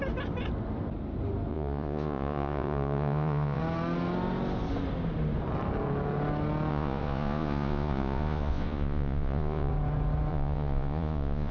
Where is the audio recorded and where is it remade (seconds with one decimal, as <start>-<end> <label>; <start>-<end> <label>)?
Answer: 0.0-1.5 recorded; 1.5-3.6 remade; 3.6-6.7 recorded; 6.7-9.7 remade; 9.7-10.3 recorded; 10.3-11.5 remade